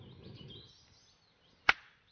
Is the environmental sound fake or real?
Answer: real